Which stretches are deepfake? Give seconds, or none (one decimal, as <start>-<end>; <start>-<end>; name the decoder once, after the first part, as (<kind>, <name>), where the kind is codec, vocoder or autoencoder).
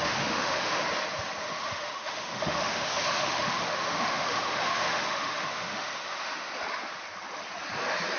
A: 0.0-0.8 (autoencoder, DAC-VAE); 1.4-6.5